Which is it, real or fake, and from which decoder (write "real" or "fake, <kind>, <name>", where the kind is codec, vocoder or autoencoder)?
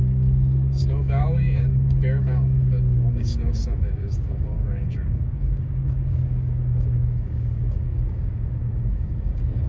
fake, codec, DAC